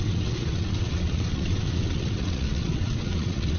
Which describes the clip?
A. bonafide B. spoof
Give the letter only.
B